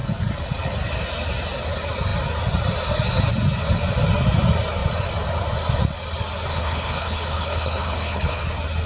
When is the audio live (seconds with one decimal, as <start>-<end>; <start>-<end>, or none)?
0.0-6.5; 8.4-8.9